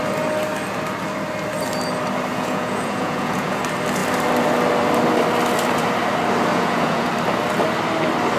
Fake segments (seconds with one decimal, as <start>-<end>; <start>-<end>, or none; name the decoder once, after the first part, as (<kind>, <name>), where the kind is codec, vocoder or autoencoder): 2.3-3.6 (vocoder, Vocos); 6.5-7.1